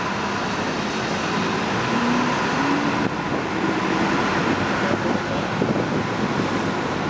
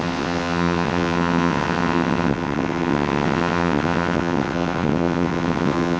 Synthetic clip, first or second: second